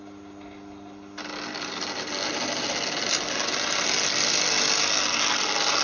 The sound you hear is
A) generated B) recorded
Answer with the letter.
B